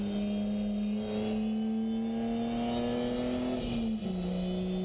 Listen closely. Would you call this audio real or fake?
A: real